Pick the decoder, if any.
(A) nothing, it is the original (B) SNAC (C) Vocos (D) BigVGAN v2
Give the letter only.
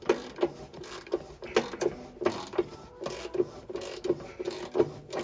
A